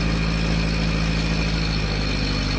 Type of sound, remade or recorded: recorded